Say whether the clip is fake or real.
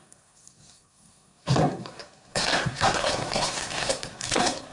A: fake